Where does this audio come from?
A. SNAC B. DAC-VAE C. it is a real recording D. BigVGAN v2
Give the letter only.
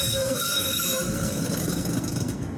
A